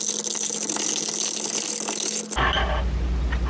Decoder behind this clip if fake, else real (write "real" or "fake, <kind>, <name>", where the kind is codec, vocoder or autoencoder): real